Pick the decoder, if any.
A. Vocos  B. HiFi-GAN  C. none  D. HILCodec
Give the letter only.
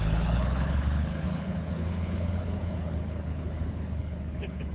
D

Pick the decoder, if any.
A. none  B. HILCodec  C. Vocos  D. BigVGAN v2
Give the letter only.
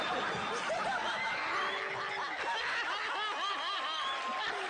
A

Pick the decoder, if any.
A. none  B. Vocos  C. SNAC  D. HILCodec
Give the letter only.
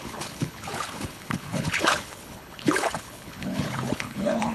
D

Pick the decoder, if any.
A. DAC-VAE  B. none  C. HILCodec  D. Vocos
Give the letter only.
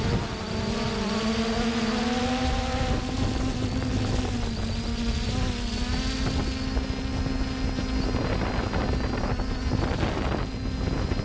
B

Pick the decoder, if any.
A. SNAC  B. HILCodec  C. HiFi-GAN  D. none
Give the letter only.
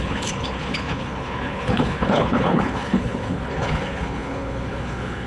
B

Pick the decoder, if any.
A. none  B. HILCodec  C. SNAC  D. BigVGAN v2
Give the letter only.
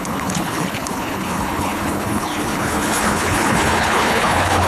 B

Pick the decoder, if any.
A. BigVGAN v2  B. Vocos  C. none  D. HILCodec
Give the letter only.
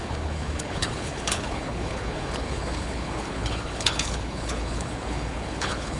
D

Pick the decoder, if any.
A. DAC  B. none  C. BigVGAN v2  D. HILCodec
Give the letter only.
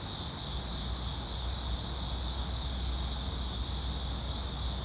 B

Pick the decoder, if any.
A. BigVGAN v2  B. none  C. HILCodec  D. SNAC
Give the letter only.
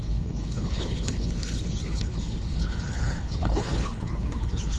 C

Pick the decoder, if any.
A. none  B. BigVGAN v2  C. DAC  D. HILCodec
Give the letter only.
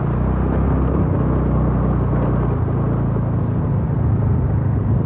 A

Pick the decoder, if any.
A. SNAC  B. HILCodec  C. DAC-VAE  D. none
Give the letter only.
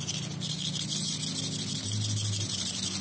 D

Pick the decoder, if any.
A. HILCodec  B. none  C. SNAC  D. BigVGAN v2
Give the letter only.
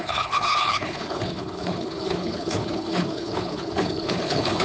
A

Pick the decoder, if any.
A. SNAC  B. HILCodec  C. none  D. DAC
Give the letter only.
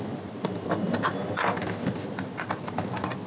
C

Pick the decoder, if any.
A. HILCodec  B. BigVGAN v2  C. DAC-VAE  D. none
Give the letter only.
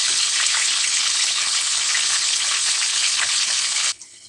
A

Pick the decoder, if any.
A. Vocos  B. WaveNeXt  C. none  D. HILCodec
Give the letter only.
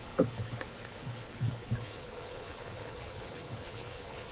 D